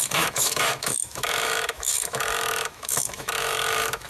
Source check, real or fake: fake